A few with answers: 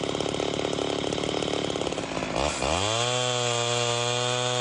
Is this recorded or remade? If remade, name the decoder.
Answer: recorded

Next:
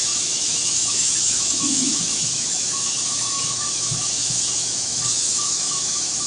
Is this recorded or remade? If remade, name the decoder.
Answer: remade, autoencoder, DAC-VAE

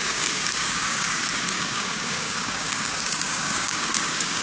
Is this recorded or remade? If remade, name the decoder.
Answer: remade, codec, DAC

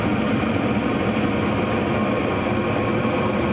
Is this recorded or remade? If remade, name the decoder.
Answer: recorded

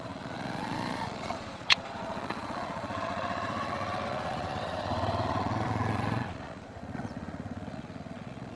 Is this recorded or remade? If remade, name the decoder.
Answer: remade, vocoder, Vocos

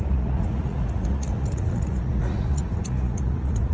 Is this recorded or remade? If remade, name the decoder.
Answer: remade, vocoder, Vocos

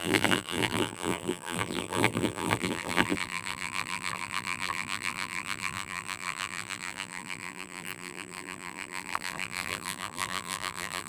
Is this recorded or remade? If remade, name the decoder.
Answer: remade, vocoder, BigVGAN v2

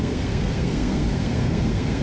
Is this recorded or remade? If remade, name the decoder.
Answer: remade, codec, SNAC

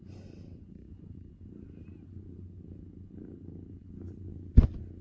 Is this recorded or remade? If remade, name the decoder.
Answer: recorded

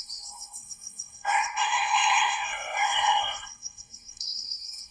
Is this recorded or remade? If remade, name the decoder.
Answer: remade, codec, SNAC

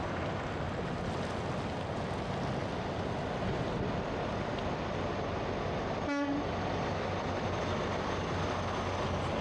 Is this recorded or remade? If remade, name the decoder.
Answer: recorded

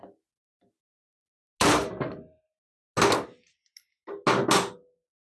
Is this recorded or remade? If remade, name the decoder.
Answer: recorded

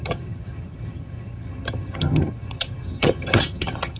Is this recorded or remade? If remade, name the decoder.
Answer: remade, vocoder, HiFi-GAN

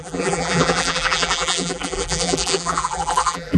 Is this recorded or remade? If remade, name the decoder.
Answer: remade, vocoder, BigVGAN v2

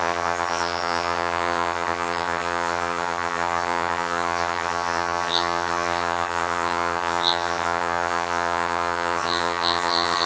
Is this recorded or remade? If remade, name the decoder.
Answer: remade, vocoder, HiFi-GAN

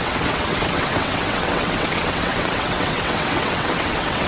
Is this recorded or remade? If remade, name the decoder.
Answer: remade, vocoder, WaveNeXt